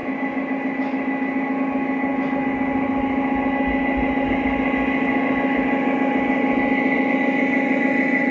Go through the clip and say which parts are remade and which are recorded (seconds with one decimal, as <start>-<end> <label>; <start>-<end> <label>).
0.0-8.3 recorded